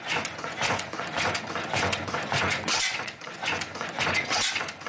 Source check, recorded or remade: remade